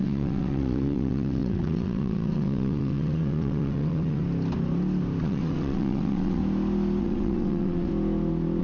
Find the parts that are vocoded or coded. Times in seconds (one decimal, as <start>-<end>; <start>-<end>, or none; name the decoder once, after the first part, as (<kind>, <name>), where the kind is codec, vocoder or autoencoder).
0.0-4.2 (vocoder, WaveNeXt); 5.2-6.4; 7.0-7.9